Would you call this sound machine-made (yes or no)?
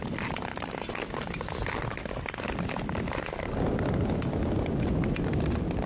no